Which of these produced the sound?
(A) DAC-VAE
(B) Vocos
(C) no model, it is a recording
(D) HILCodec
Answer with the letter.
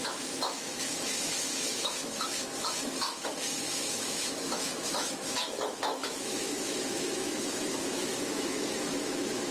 A